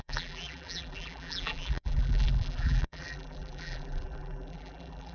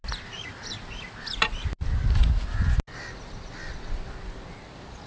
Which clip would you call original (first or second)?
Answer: second